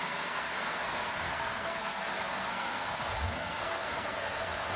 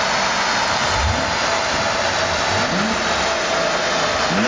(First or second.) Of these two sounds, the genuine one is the second